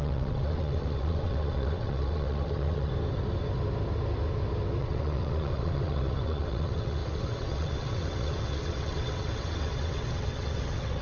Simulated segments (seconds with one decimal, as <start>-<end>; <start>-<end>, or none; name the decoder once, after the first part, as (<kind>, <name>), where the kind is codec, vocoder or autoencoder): 0.0-2.9 (vocoder, WaveNeXt); 4.8-11.0